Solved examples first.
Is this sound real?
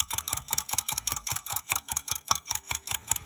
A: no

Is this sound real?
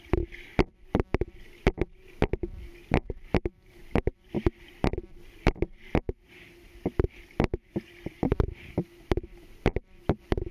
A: yes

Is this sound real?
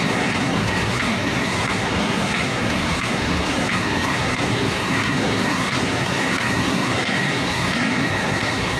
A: no